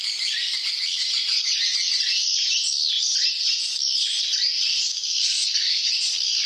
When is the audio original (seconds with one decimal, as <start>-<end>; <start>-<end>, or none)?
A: 0.0-4.9; 5.9-6.5